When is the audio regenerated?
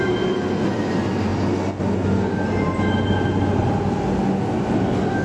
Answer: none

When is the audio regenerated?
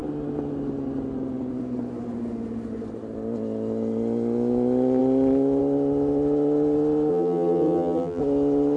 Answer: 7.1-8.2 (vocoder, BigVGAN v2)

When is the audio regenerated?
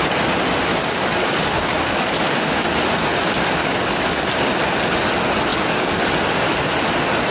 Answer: 0.7-2.6 (codec, DAC); 3.6-4.2; 5.5-6.0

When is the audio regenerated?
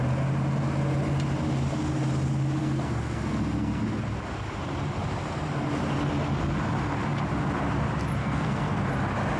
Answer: 2.6-3.8 (codec, SNAC); 8.2-8.8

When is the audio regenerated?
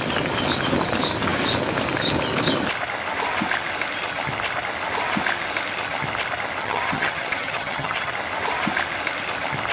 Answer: 6.6-8.1 (vocoder, HiFi-GAN)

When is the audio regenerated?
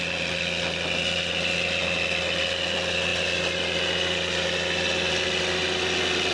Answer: none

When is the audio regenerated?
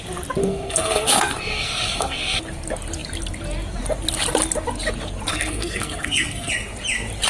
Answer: 0.4-2.4 (codec, SNAC); 5.3-6.5